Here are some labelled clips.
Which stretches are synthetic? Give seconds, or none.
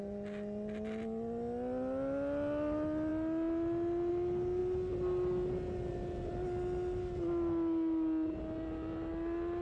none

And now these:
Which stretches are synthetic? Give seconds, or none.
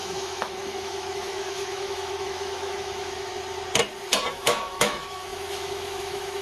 0.0-3.3; 4.3-6.4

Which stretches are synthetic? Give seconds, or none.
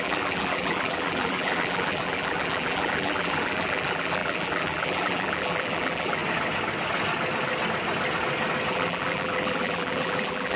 0.0-6.2; 8.7-10.6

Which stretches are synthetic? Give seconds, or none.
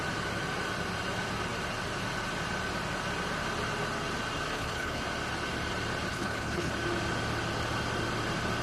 4.5-5.0; 6.1-6.7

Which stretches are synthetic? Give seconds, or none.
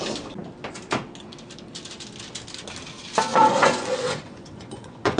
3.3-5.2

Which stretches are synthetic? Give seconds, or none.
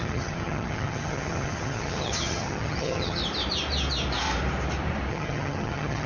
0.0-3.2; 5.1-6.1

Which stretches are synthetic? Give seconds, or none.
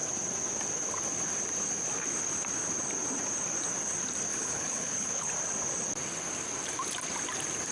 4.3-5.3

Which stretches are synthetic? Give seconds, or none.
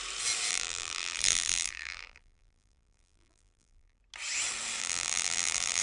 0.5-4.0; 4.8-5.8